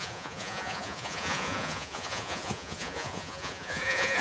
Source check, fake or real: fake